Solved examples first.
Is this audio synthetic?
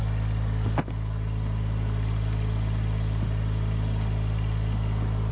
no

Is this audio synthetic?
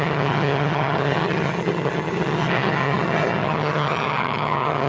yes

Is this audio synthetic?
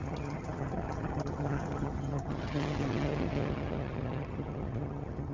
yes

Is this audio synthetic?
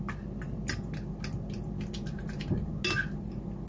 no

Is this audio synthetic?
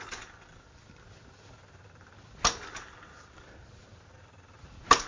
no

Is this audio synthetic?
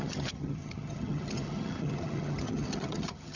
yes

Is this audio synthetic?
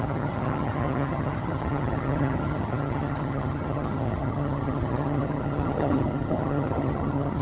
yes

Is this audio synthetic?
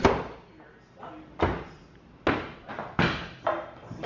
no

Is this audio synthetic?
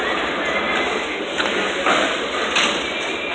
no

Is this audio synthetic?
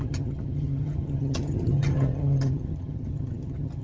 yes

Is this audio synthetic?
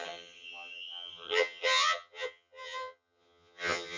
yes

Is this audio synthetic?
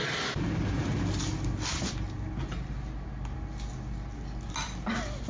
no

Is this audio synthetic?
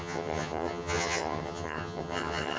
yes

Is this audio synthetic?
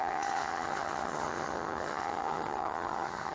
yes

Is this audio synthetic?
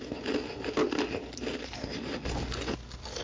no